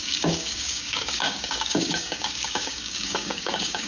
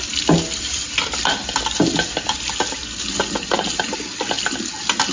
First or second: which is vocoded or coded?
first